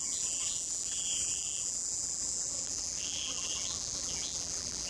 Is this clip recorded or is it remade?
remade